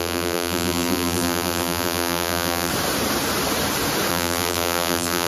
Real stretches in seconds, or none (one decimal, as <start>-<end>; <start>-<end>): 2.7-4.1